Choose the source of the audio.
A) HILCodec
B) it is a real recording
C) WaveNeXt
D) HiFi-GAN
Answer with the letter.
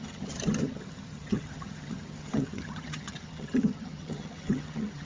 D